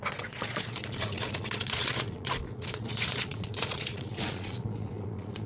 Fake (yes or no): yes